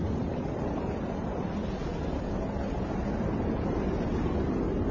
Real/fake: real